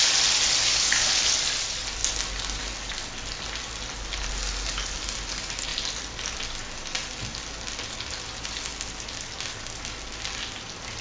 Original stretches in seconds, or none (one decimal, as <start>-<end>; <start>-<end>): 0.0-0.6; 1.2-11.0